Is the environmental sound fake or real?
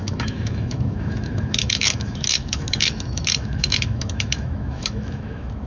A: fake